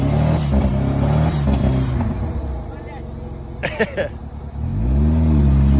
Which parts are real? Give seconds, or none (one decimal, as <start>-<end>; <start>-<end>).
0.0-5.8